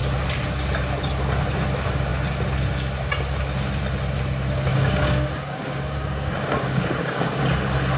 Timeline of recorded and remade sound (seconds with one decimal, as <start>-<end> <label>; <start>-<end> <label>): 0.0-4.7 recorded; 4.7-7.4 remade; 7.4-8.0 recorded